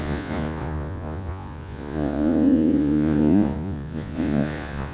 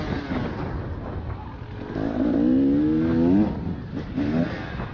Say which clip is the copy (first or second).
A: first